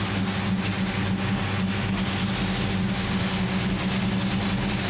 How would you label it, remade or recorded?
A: recorded